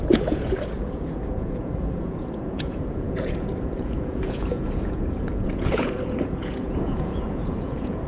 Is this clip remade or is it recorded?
remade